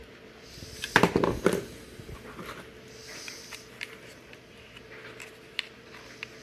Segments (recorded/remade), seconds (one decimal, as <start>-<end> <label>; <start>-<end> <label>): 0.0-3.0 recorded; 3.0-4.8 remade; 4.8-6.4 recorded